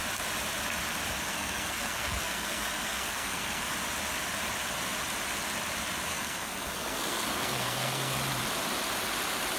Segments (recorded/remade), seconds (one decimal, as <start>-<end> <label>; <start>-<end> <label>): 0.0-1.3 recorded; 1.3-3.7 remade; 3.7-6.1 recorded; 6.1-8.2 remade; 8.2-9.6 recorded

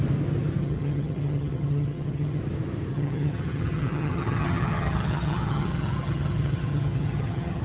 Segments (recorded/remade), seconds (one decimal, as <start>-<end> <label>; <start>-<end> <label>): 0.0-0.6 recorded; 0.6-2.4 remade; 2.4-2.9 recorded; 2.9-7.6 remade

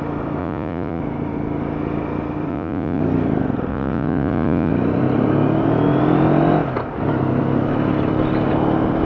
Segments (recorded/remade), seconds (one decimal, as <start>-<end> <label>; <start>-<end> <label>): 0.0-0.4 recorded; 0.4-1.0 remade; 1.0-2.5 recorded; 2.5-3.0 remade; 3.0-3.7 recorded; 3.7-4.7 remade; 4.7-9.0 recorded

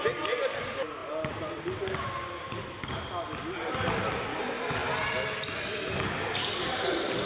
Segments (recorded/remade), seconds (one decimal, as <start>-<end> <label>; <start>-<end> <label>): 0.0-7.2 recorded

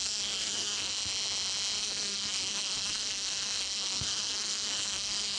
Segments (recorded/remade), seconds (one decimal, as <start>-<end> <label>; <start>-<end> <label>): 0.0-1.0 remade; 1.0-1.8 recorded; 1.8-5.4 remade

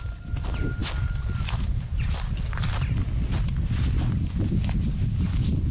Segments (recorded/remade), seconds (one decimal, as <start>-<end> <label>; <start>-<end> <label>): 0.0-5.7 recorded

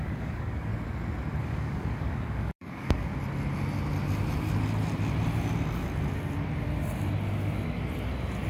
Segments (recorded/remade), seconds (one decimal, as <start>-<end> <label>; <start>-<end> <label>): 0.0-0.7 remade; 0.7-1.4 recorded; 1.4-3.1 remade; 3.1-8.5 recorded